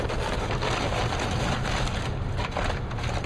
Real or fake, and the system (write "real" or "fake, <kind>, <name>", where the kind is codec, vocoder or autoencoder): real